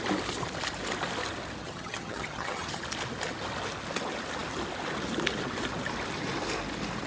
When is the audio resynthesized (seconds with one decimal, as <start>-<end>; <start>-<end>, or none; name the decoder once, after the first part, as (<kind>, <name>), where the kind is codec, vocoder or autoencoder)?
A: 1.6-2.8 (vocoder, HiFi-GAN)